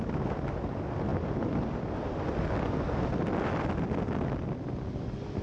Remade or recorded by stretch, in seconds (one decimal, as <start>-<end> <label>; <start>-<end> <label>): 0.0-5.4 recorded